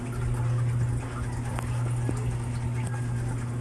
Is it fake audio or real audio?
real